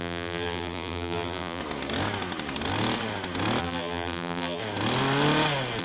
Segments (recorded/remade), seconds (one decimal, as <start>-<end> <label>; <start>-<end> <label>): 0.0-1.6 remade; 1.6-3.6 recorded; 3.6-4.6 remade; 4.6-5.8 recorded